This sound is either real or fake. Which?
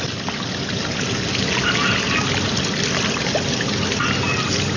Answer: real